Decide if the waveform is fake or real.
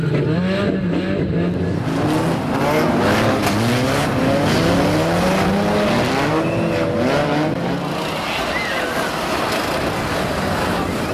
real